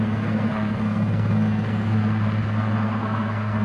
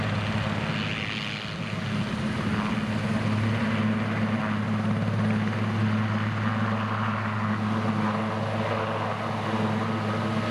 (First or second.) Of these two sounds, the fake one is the first